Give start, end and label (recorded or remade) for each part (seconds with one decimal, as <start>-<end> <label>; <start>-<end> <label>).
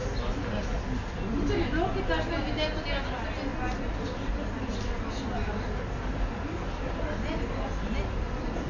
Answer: 0.0-8.7 recorded